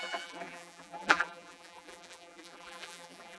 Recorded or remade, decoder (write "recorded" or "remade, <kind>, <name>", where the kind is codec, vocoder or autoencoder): remade, vocoder, BigVGAN v2